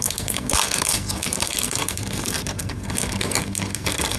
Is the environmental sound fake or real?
fake